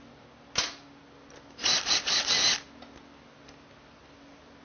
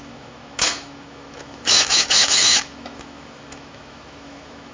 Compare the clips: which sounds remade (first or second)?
second